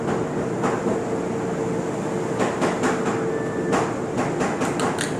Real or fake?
real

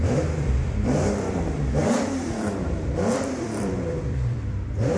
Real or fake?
fake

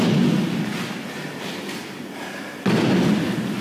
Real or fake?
real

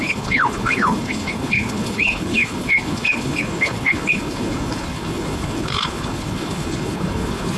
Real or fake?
fake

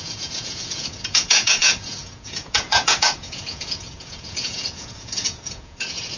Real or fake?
fake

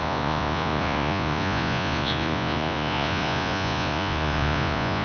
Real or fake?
fake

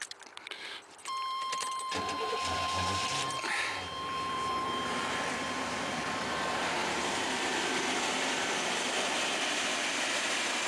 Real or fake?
fake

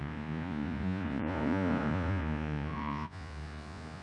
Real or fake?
fake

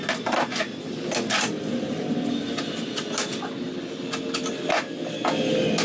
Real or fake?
real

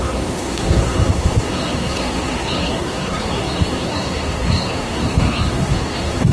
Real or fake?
fake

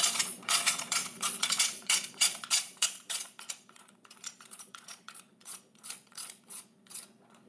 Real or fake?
fake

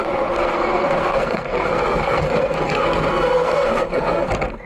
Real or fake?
fake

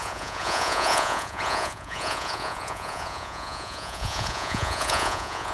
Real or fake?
fake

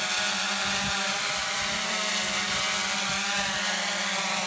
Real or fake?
real